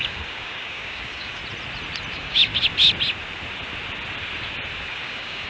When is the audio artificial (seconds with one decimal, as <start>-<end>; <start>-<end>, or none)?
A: 0.0-1.4; 2.1-2.5; 4.8-5.5